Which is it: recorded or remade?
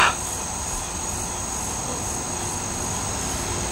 recorded